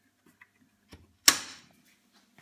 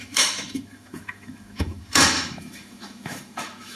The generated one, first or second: second